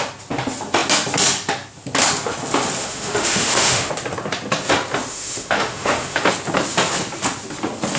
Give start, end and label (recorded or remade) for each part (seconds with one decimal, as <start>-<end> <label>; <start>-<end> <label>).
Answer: 0.0-2.8 recorded; 2.8-3.9 remade; 3.9-5.1 recorded; 5.1-6.2 remade; 6.2-8.0 recorded